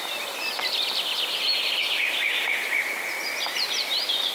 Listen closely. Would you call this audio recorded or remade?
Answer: remade